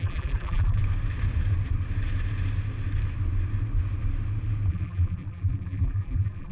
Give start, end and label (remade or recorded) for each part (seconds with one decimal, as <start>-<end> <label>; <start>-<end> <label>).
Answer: 0.0-0.8 remade; 0.8-4.7 recorded; 4.7-6.5 remade